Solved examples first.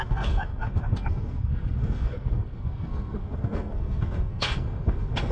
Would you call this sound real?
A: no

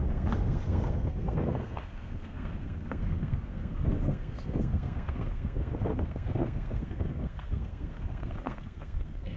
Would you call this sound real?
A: no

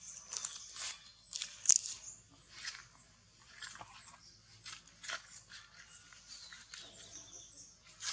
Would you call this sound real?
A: yes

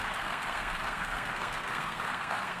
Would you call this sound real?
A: no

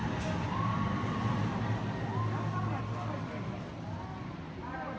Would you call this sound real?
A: yes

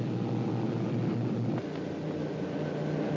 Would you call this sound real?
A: yes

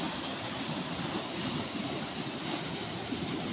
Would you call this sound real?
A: yes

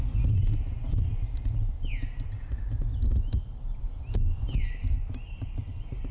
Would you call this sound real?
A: yes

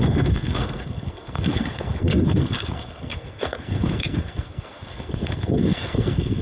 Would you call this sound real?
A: no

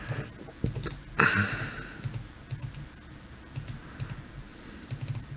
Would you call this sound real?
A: yes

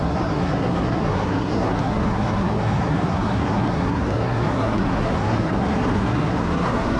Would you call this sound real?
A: no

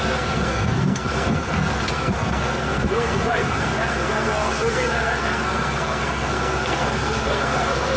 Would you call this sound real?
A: no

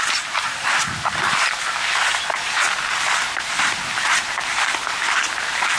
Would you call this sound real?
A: yes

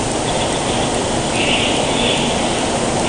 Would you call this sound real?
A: yes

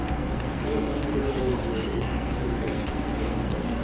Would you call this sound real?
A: no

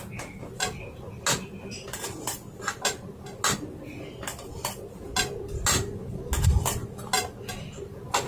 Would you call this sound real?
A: yes